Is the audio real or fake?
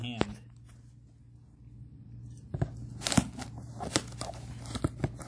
real